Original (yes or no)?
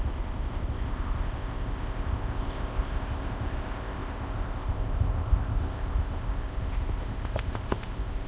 no